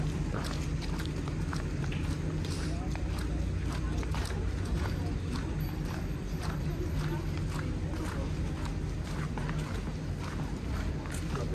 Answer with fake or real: real